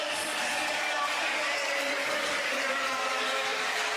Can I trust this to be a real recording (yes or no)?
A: no